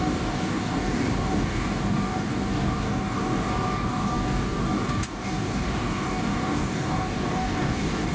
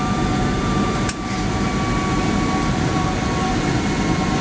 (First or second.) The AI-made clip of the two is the first